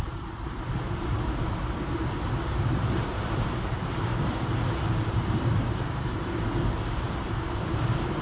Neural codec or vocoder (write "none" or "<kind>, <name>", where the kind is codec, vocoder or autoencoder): vocoder, BigVGAN v2